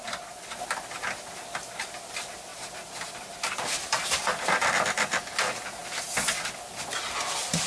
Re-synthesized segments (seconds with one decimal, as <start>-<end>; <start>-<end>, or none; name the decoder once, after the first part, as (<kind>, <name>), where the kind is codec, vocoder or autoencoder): none